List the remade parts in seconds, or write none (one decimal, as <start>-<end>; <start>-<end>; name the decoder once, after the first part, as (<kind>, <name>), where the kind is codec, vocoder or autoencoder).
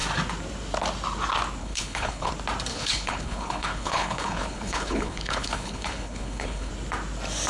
1.6-2.3 (codec, HILCodec); 2.7-6.7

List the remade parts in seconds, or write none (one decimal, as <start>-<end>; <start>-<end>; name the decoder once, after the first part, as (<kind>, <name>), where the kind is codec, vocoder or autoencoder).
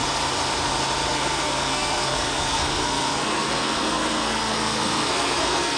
1.1-5.8 (codec, SNAC)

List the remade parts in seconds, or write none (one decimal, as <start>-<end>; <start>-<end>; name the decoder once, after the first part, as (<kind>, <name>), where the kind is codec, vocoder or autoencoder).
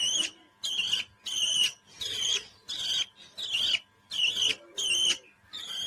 none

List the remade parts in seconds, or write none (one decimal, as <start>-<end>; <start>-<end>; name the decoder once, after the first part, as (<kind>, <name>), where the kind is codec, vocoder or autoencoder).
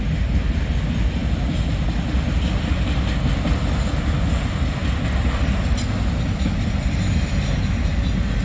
none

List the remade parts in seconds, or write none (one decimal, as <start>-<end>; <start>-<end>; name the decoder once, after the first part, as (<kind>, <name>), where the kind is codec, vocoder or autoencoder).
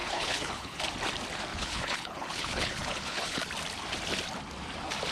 0.0-0.8 (codec, HILCodec); 1.5-3.5